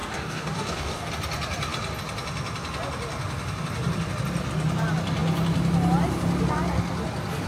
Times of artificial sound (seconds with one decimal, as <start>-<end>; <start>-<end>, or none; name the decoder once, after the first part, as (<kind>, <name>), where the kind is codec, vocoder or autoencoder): 0.0-1.1 (codec, DAC)